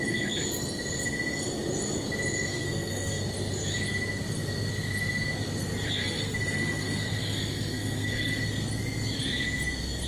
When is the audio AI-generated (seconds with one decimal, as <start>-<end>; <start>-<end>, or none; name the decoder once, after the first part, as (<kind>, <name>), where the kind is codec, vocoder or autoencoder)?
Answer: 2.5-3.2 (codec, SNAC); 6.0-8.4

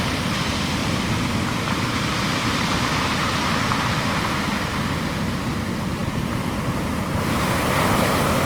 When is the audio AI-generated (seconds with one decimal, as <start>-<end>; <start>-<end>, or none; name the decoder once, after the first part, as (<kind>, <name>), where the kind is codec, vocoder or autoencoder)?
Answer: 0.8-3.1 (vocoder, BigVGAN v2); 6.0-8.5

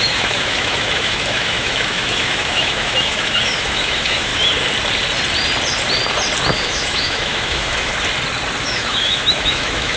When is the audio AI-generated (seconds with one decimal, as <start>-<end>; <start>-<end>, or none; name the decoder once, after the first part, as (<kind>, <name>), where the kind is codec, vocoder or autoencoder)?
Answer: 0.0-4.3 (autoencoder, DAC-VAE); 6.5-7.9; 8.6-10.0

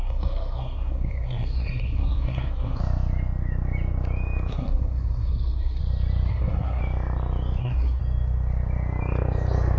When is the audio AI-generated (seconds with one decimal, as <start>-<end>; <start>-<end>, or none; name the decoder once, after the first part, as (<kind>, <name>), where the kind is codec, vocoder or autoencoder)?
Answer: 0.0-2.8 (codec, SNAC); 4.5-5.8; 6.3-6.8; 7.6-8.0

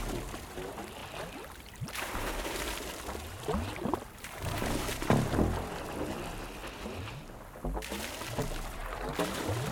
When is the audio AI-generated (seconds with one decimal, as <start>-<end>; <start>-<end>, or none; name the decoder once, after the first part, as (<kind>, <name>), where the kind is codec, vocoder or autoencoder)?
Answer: 0.0-6.6 (vocoder, BigVGAN v2); 8.0-9.7

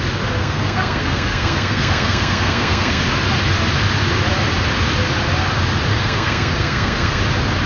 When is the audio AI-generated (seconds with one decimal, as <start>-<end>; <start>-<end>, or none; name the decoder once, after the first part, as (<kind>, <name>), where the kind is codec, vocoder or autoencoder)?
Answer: 0.4-3.0 (codec, SNAC); 5.9-7.2